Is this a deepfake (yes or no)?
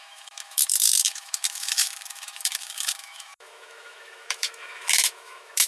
yes